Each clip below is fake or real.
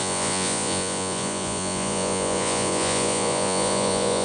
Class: fake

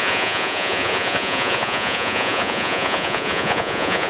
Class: fake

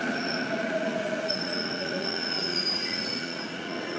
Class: fake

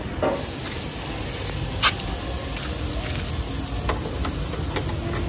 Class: real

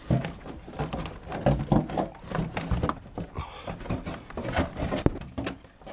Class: real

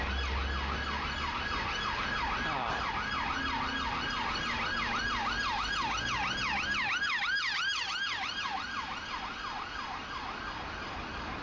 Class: real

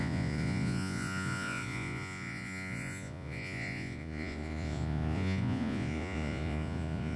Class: fake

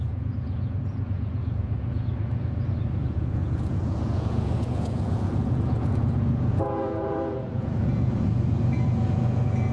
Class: fake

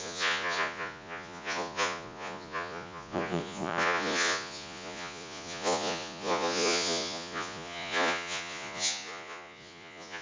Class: fake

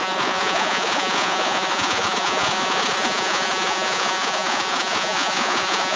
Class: fake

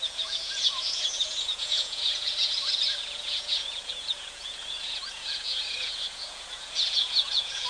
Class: fake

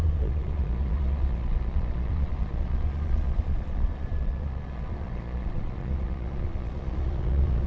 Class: fake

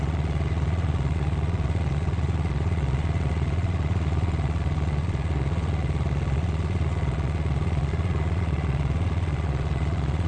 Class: fake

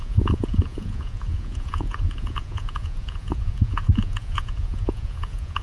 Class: fake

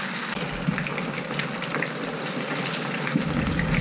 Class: real